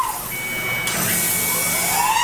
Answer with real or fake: real